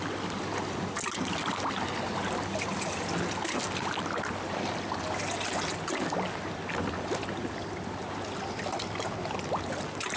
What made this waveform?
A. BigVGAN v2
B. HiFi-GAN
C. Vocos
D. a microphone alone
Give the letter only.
D